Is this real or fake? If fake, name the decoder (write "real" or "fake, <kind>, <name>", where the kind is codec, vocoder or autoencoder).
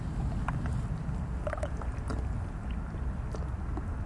real